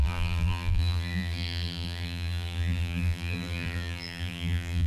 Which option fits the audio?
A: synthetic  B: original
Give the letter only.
A